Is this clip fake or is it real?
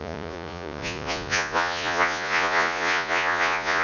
fake